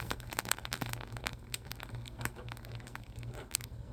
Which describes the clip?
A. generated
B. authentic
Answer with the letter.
A